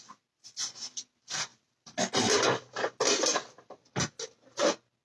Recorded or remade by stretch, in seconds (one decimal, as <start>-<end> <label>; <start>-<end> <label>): 0.0-5.0 recorded